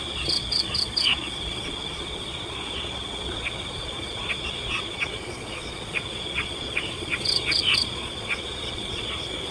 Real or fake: fake